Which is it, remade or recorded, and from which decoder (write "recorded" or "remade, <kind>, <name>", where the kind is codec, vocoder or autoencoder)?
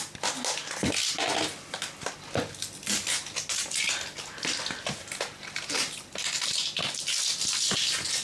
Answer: recorded